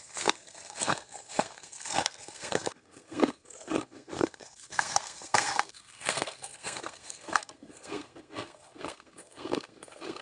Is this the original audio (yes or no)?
no